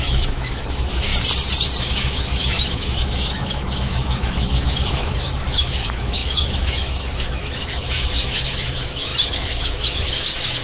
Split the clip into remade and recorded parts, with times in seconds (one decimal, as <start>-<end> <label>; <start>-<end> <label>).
0.0-1.1 remade; 1.1-1.8 recorded; 1.8-10.6 remade